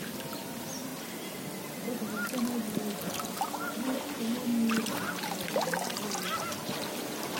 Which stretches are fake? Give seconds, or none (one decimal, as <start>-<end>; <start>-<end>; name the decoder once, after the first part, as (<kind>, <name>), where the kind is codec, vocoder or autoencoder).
none